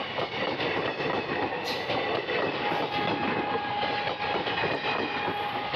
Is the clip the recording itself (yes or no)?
yes